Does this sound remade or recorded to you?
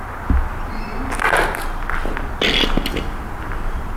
recorded